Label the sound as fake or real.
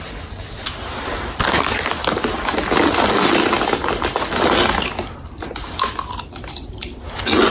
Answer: real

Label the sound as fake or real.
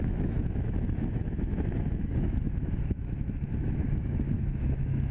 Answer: fake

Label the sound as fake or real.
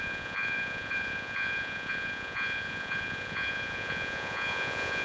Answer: fake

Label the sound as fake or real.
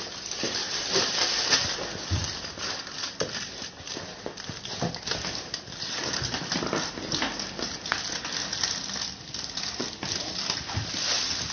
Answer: real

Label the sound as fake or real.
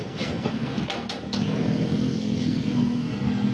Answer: fake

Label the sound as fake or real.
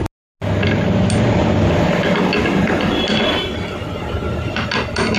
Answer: real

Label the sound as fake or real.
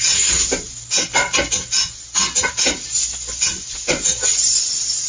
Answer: real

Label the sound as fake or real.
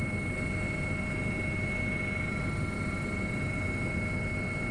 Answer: real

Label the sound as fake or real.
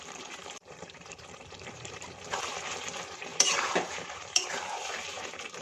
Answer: fake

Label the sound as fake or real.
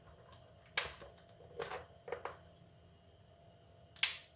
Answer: real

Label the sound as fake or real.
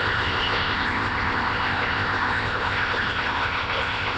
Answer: fake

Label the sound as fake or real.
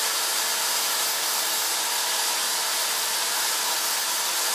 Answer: real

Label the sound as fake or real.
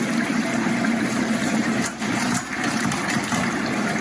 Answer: fake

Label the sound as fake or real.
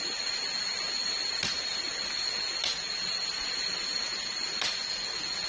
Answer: real